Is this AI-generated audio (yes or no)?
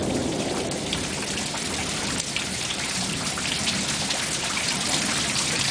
yes